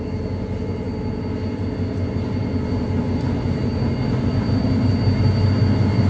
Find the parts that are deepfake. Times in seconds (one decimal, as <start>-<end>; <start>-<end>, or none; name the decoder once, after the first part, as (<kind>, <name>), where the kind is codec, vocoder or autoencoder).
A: none